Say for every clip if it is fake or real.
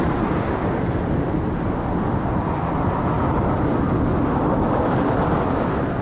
real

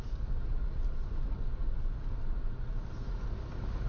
real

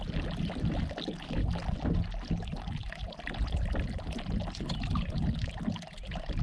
real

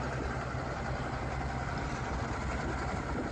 real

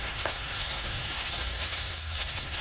fake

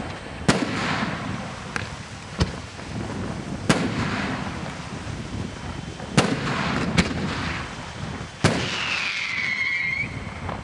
real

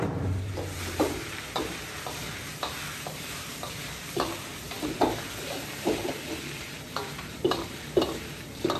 fake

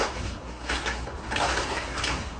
fake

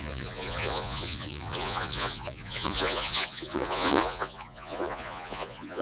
fake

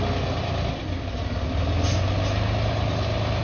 real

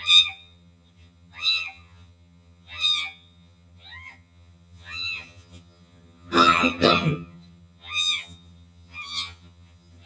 fake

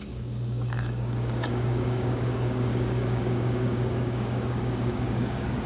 fake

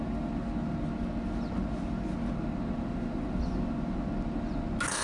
real